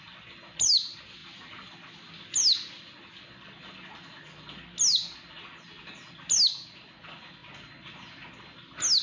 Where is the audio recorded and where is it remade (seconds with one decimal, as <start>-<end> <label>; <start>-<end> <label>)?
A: 0.0-6.5 recorded; 6.5-7.0 remade; 7.0-9.0 recorded